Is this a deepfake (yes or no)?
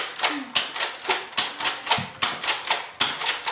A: no